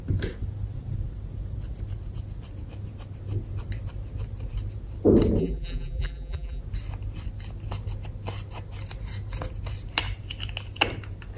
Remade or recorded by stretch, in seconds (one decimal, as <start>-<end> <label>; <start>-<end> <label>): 0.0-5.4 recorded; 5.4-6.6 remade; 6.6-11.4 recorded